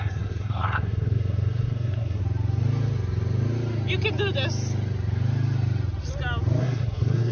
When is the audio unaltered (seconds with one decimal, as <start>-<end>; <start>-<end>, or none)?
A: 2.2-6.6